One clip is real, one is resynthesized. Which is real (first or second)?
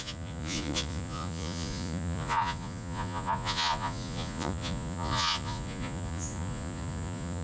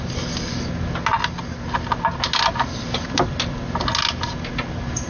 second